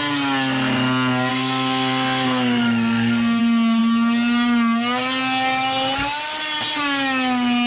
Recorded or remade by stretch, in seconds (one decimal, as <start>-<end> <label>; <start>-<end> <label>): 0.0-1.3 recorded; 1.3-3.4 remade; 3.4-7.7 recorded